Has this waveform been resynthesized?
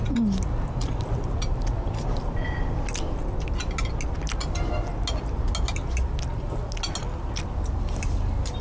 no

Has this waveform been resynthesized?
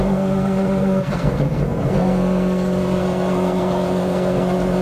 yes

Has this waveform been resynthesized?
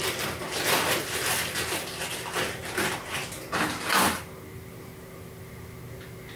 no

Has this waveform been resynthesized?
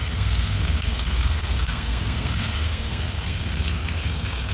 yes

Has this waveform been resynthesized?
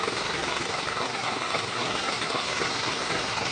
yes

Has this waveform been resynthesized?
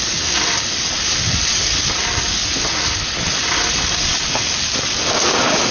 no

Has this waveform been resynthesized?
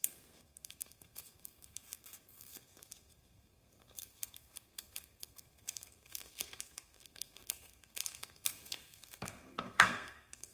yes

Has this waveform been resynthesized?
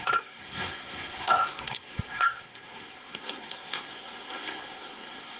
yes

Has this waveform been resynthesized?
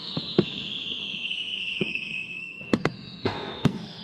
yes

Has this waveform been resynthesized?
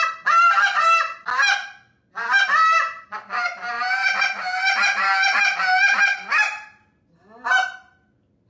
no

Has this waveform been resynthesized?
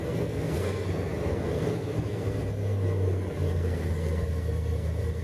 yes